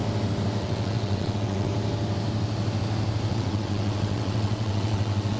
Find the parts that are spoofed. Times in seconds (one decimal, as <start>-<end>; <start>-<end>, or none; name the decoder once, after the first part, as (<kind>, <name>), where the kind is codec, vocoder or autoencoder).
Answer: 0.6-1.7 (vocoder, WaveNeXt); 3.3-5.4